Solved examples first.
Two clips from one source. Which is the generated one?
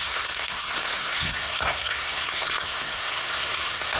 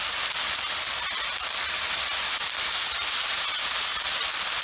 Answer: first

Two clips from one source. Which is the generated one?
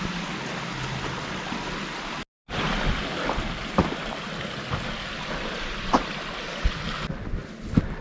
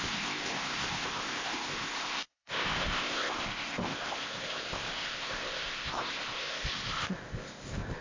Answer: second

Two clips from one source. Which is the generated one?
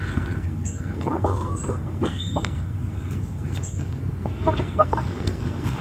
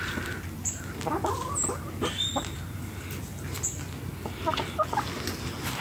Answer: first